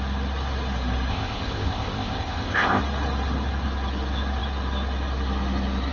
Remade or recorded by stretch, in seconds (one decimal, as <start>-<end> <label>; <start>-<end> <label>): 0.0-1.1 recorded; 1.1-2.8 remade; 2.8-5.9 recorded